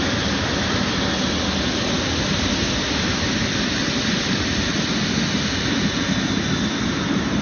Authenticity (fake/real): real